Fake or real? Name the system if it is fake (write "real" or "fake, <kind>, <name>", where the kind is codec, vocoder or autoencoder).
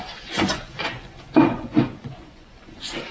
fake, vocoder, Vocos